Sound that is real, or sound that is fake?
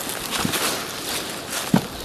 real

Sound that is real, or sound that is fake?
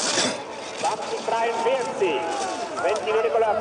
real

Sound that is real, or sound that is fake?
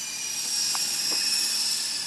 real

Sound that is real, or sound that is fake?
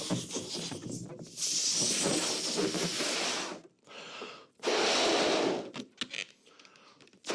real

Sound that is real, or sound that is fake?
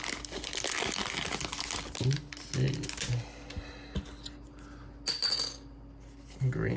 real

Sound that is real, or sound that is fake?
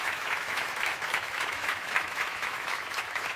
fake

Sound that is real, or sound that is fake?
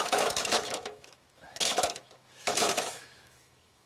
fake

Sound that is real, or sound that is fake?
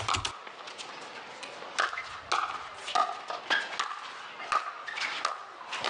real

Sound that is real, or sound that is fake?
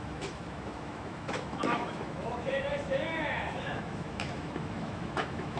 fake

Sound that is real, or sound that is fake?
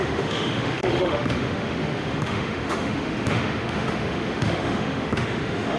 fake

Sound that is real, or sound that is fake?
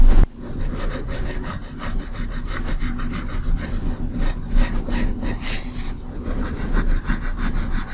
real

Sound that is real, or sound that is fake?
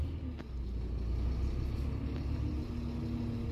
real